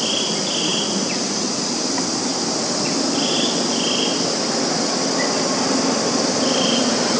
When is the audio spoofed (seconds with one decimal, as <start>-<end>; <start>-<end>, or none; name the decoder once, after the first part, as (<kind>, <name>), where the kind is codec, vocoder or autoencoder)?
none